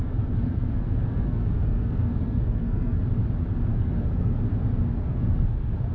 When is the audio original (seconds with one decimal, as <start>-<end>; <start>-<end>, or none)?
3.0-3.7; 4.4-5.0